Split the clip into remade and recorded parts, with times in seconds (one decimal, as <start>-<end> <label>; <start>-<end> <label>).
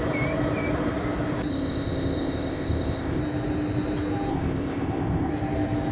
0.0-1.5 recorded; 1.5-3.2 remade; 3.2-4.3 recorded; 4.3-5.3 remade; 5.3-5.9 recorded